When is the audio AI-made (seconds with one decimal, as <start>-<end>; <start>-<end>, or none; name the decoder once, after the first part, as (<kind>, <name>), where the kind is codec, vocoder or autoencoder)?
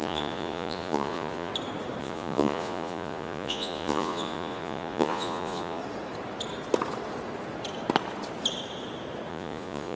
0.0-1.5 (vocoder, Vocos); 2.0-5.8; 9.3-10.0